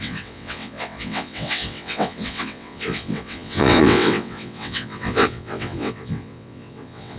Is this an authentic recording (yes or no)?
no